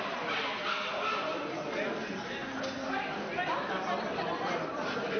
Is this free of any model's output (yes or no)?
yes